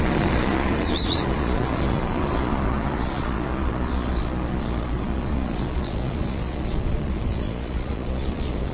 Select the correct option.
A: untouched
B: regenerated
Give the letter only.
B